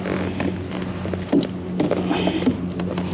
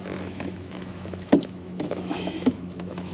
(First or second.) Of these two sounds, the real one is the first